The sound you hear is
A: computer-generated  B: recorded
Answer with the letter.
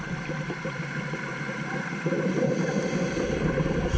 A